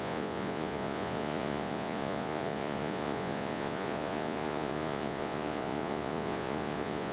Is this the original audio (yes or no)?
no